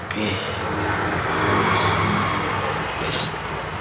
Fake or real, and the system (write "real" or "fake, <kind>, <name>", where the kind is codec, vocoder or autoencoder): real